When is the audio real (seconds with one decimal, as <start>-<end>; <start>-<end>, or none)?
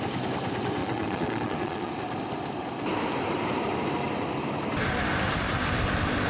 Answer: 0.0-0.8; 1.9-6.3